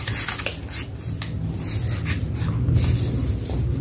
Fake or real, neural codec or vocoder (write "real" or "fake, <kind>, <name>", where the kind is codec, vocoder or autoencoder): real